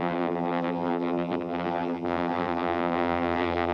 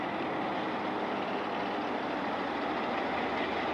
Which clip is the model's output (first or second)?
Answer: first